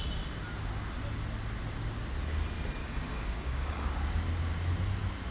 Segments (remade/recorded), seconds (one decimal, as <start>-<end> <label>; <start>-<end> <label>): 0.0-2.8 recorded; 2.8-3.9 remade; 3.9-5.3 recorded